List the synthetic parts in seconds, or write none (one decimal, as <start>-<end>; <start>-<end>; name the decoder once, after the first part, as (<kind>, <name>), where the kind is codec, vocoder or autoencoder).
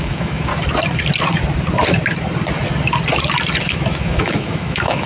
0.0-0.5 (autoencoder, DAC-VAE); 3.6-5.1